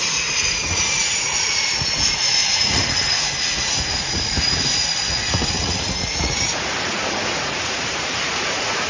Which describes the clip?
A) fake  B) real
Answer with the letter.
A